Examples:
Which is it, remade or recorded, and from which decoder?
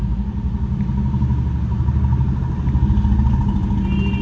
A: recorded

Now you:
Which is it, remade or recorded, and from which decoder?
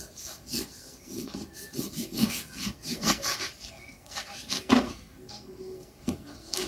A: remade, codec, SNAC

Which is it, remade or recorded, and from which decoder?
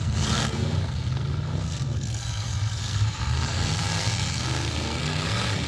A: remade, codec, SNAC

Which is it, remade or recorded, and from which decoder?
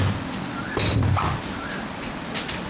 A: recorded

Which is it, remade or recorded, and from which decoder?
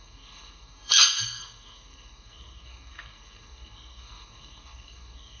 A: remade, codec, SNAC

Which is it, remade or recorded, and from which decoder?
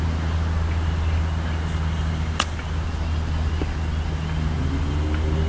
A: recorded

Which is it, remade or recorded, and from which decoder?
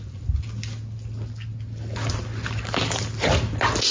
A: recorded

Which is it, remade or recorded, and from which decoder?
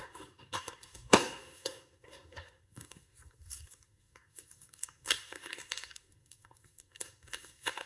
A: remade, codec, SNAC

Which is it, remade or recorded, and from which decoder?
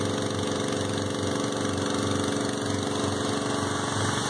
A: recorded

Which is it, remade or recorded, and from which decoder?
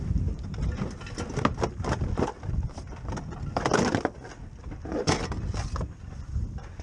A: recorded